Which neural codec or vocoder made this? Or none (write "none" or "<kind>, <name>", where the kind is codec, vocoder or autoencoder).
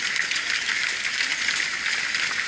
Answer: none